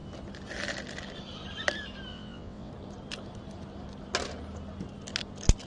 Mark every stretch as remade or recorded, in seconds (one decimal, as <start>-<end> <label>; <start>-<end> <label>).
0.0-2.1 recorded; 2.1-2.7 remade; 2.7-5.7 recorded